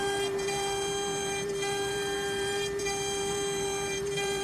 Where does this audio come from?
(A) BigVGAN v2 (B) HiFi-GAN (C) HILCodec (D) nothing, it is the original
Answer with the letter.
A